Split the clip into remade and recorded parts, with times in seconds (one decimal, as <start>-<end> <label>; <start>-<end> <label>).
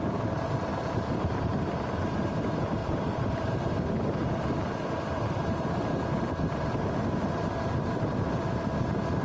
0.0-9.2 remade